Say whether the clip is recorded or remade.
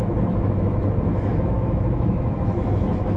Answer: remade